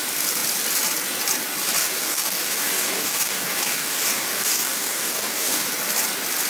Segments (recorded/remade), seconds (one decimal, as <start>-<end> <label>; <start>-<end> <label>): 0.0-1.8 recorded; 1.8-5.7 remade; 5.7-6.5 recorded